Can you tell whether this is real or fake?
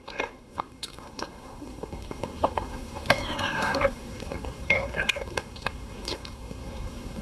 fake